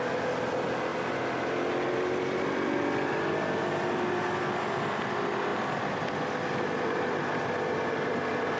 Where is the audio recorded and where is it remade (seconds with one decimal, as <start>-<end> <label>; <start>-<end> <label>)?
0.0-8.6 recorded